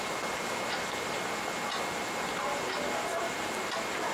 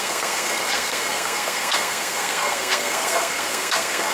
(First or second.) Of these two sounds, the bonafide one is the first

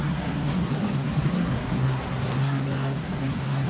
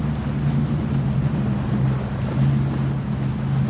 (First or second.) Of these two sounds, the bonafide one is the second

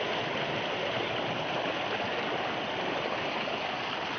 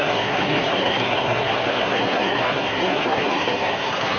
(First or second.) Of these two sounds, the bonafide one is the first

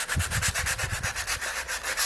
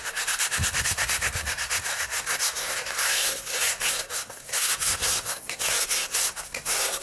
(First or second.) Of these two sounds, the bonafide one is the first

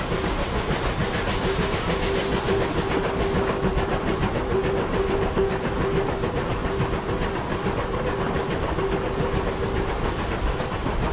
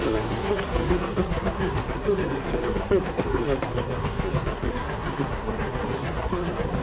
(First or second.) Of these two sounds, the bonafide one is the first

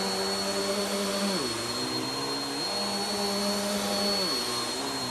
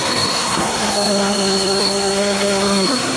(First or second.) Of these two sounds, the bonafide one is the first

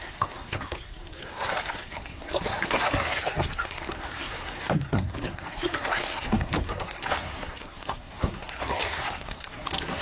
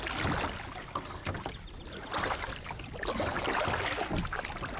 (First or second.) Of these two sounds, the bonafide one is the second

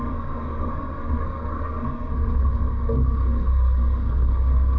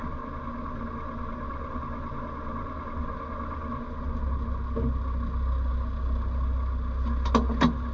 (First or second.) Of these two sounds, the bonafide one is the second